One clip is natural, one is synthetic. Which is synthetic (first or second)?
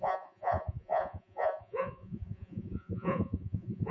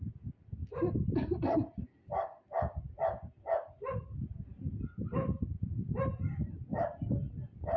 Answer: first